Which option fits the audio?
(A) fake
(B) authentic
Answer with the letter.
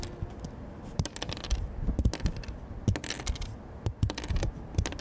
B